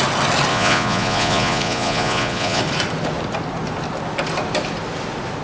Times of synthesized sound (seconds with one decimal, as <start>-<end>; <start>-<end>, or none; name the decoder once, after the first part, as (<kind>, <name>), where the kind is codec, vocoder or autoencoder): 0.5-2.6 (vocoder, Vocos)